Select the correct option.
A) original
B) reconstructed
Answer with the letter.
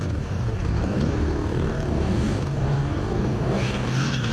B